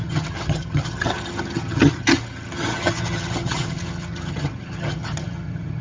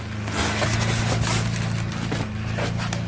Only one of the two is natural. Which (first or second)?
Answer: second